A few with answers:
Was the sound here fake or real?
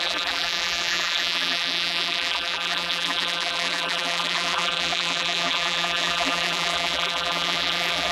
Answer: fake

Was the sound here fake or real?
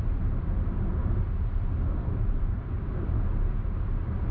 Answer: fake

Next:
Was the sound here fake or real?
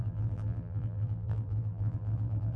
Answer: fake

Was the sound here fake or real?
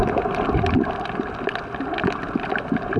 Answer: real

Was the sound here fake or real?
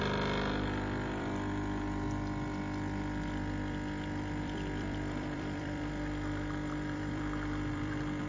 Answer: fake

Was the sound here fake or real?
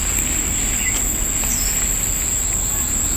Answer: real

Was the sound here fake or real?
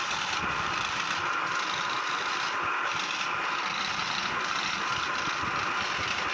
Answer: real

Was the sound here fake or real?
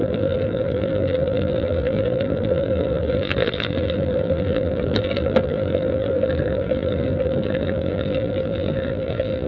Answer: fake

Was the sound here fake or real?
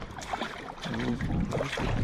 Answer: fake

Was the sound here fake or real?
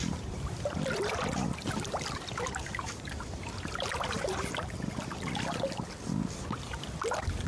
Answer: real